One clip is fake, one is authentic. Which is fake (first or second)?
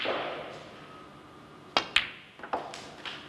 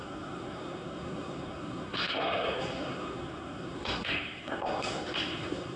second